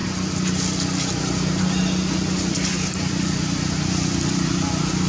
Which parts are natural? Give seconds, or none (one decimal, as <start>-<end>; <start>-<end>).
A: 0.0-5.1